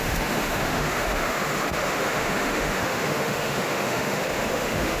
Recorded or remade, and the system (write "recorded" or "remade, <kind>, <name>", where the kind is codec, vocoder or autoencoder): remade, autoencoder, DAC-VAE